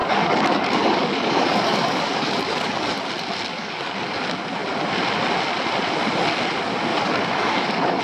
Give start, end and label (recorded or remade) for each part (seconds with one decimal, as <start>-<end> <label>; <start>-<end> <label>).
0.0-3.1 remade; 3.1-3.5 recorded; 3.5-4.1 remade; 4.1-6.9 recorded; 6.9-8.0 remade